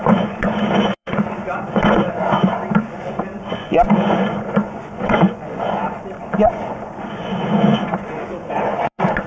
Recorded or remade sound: remade